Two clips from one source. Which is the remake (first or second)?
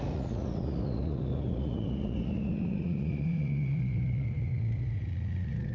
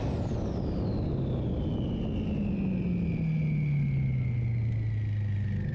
first